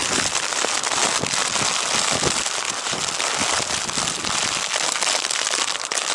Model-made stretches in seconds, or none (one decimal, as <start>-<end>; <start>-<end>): none